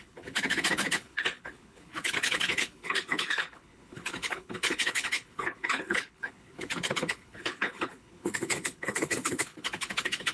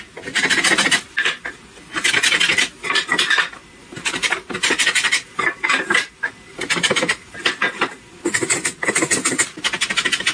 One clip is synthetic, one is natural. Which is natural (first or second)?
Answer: second